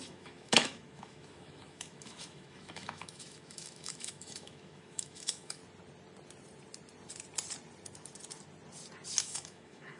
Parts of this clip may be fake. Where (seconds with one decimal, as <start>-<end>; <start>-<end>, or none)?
0.0-5.6; 9.2-10.0